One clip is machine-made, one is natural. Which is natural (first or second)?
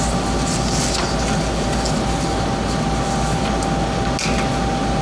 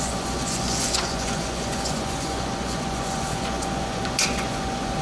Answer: first